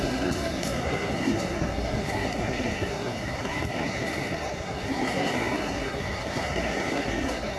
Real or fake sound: fake